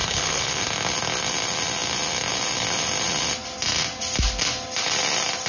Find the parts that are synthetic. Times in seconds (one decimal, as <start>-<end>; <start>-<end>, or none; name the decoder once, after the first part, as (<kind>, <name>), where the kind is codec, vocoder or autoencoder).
0.0-0.6 (codec, HILCodec)